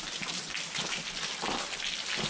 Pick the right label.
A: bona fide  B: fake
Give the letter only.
A